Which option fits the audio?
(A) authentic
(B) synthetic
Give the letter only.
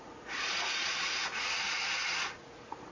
B